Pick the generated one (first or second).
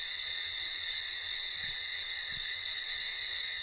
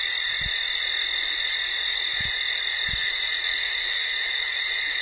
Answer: first